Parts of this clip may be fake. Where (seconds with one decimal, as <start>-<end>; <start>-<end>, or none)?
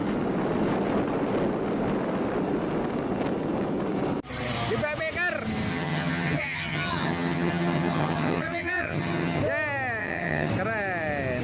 5.7-9.4; 10.0-10.5